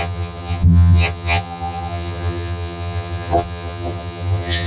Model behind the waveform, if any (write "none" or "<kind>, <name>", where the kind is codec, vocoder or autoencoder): vocoder, HiFi-GAN